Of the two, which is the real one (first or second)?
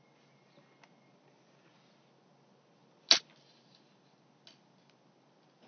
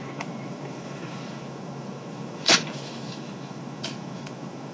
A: first